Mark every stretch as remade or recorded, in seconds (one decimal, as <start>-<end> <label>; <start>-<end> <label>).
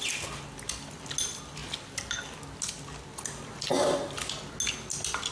0.0-5.3 recorded